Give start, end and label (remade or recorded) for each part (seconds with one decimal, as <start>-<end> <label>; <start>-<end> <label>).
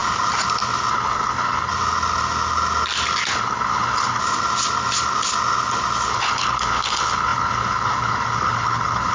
0.0-0.9 recorded; 0.9-1.7 remade; 1.7-3.3 recorded; 3.3-4.2 remade; 4.2-6.1 recorded; 6.1-9.1 remade